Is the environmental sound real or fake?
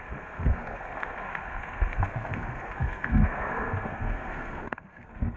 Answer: fake